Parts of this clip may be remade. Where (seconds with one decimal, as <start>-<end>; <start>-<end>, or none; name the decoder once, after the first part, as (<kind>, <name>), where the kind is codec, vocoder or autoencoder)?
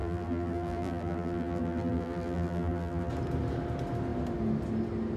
0.0-3.1 (vocoder, BigVGAN v2)